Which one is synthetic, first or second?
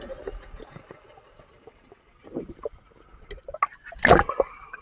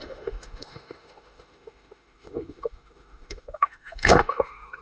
second